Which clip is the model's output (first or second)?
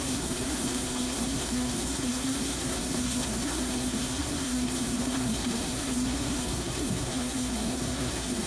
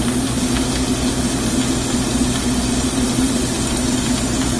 first